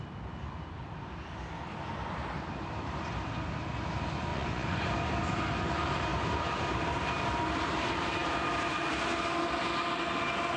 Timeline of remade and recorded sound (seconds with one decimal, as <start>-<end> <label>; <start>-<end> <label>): 0.0-4.3 recorded; 4.3-4.9 remade; 4.9-10.6 recorded